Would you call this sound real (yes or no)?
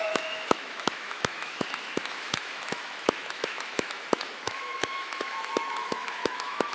no